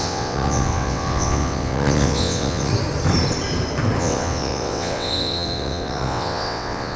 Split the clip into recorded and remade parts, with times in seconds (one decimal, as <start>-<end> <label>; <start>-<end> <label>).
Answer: 0.0-2.7 remade; 2.7-4.0 recorded; 4.0-7.0 remade